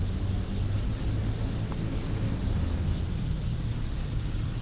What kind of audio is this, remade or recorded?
recorded